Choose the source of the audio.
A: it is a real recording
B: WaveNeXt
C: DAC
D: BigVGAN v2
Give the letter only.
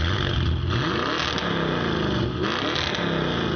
A